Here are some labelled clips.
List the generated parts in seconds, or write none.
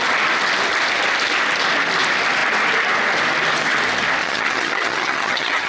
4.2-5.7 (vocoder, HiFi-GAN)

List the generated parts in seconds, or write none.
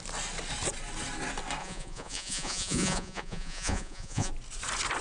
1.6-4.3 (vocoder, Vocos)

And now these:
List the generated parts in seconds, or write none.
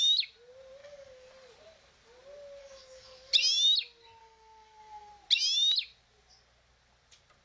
0.8-1.3 (codec, DAC); 2.6-3.3; 4.2-5.1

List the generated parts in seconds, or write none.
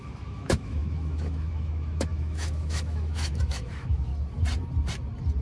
0.0-4.1 (autoencoder, DAC-VAE)